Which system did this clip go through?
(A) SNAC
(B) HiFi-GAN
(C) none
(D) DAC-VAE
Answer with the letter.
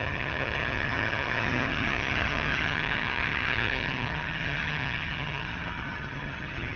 B